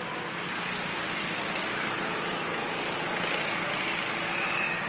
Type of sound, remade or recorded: recorded